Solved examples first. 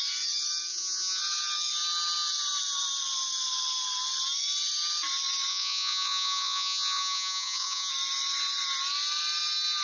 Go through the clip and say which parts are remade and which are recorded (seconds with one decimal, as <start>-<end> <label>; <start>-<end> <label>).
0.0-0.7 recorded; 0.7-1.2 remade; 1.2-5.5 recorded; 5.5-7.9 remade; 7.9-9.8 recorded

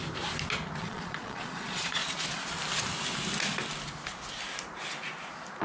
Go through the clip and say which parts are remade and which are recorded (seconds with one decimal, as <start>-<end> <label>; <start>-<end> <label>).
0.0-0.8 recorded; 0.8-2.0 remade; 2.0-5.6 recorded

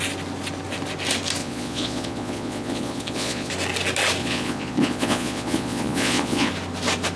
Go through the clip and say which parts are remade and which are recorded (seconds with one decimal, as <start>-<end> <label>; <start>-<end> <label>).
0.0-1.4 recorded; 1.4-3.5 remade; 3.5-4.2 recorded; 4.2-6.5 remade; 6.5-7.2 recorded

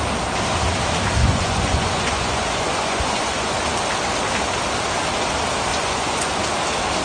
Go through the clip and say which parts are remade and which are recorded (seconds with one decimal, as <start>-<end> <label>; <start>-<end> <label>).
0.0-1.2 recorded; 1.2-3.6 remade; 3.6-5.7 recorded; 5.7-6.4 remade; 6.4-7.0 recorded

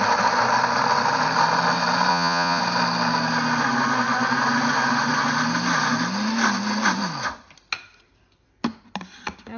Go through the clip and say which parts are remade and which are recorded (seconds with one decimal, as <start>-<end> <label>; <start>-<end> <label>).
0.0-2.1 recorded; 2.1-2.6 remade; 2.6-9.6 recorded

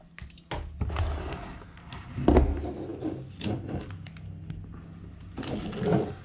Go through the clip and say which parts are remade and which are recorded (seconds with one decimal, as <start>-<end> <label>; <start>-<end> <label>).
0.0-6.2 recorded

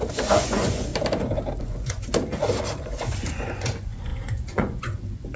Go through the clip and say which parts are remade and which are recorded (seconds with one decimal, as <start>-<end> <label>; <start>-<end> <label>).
0.0-0.9 remade; 0.9-1.6 recorded; 1.6-2.1 remade; 2.1-2.8 recorded; 2.8-5.4 remade

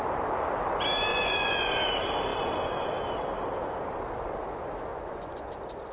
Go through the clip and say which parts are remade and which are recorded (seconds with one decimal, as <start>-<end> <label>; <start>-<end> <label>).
0.0-1.1 recorded; 1.1-1.8 remade; 1.8-4.9 recorded; 4.9-5.5 remade; 5.5-5.9 recorded